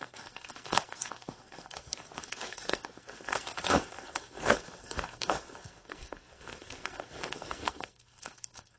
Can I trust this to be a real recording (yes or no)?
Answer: no